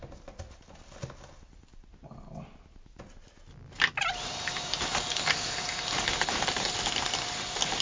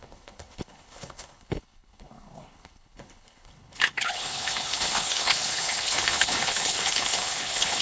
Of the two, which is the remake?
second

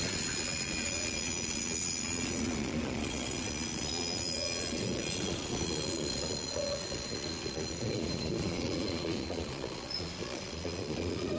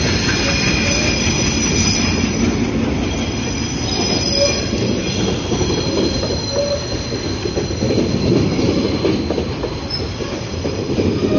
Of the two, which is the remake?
first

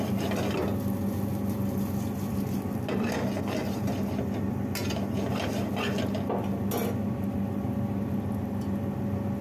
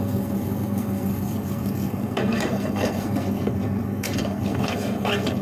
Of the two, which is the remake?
second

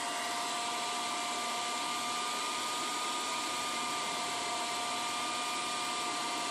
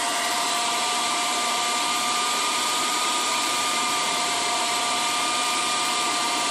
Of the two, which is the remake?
second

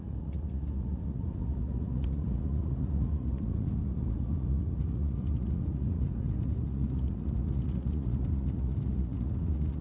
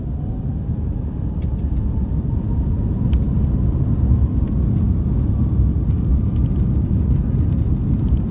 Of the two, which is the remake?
first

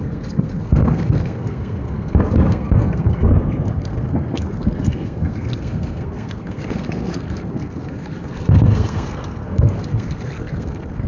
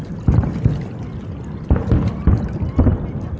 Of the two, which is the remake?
first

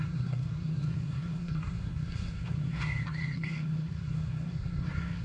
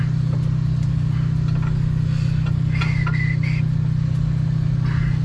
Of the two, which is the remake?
first